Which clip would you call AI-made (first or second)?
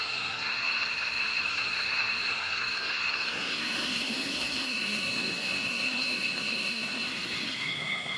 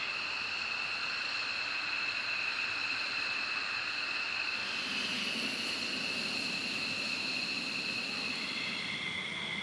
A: first